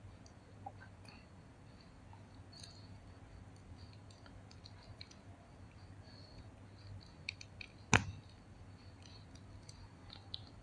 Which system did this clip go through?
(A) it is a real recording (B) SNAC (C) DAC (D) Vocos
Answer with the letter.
A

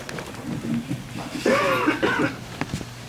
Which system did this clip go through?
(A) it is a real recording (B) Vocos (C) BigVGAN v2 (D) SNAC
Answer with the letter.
A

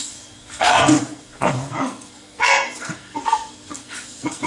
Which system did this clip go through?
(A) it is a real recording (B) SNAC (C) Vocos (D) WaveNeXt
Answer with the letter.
B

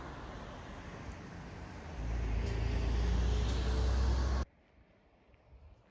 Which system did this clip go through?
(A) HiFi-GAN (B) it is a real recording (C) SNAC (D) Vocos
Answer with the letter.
B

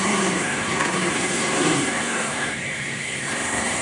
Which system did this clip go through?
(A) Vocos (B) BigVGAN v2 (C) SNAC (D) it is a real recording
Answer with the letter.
C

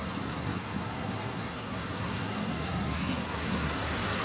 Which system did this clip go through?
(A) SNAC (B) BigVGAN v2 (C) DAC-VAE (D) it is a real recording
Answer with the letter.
A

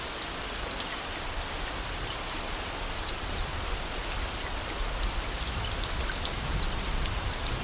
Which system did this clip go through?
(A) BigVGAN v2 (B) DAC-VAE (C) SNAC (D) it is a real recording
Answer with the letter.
D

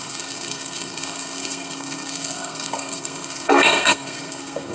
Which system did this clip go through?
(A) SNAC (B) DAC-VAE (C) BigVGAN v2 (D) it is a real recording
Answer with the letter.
A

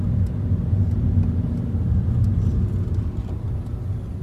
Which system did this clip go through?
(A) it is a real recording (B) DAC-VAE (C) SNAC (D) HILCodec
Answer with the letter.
A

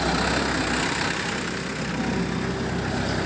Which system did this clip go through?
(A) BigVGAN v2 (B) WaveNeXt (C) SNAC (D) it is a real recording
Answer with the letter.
D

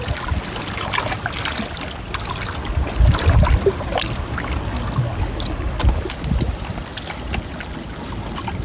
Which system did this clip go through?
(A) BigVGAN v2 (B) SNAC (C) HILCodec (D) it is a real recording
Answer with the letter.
D